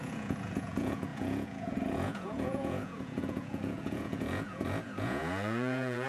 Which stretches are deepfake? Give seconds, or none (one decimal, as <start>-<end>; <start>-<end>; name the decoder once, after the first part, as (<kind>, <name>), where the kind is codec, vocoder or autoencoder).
0.0-6.1 (vocoder, Vocos)